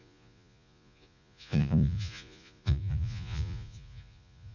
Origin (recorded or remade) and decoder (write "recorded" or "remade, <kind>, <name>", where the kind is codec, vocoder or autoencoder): remade, vocoder, Vocos